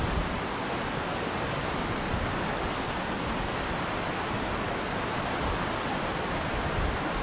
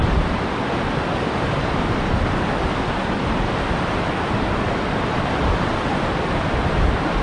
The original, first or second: first